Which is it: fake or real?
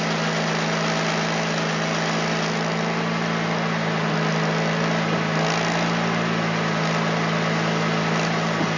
real